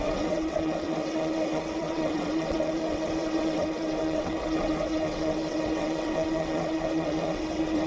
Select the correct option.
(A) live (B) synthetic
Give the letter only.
B